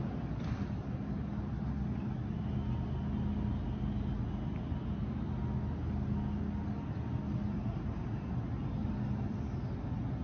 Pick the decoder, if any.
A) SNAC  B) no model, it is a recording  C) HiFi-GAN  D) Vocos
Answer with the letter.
B